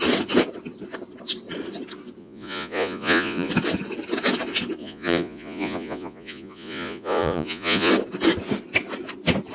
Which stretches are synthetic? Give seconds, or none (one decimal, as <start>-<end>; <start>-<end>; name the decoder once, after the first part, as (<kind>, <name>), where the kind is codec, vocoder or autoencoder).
2.2-3.5 (vocoder, Vocos); 4.8-7.9